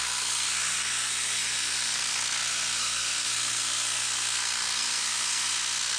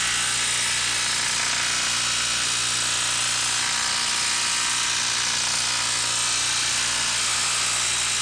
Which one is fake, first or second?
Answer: first